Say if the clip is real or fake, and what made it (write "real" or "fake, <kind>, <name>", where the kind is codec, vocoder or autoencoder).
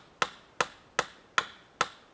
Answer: real